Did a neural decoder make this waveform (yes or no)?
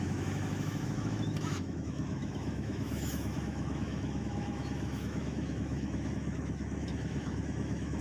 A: yes